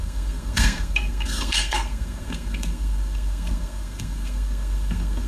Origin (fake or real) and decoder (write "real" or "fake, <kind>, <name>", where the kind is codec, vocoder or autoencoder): fake, codec, SNAC